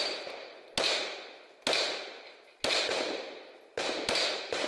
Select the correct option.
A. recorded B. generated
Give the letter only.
A